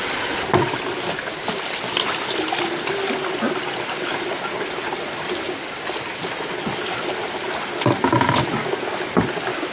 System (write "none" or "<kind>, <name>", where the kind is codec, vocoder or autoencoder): none